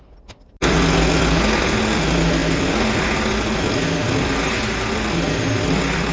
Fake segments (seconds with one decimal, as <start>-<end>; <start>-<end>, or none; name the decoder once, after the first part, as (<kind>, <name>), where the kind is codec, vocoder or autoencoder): none

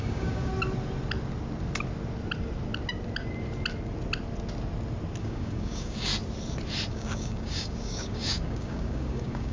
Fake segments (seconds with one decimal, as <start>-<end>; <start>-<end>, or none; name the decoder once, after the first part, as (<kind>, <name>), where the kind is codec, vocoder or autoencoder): 0.0-0.5 (codec, DAC); 5.2-6.1; 6.9-9.5

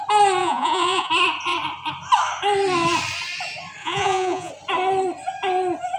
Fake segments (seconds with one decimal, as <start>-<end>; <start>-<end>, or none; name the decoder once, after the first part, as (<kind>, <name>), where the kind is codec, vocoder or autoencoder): 0.4-1.1 (vocoder, Vocos); 3.8-4.5